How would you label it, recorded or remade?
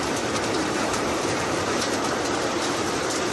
remade